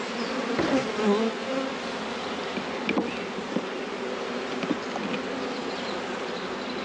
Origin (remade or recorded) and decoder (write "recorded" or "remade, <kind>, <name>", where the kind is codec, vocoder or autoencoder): recorded